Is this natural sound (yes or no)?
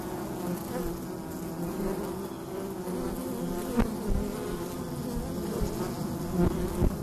yes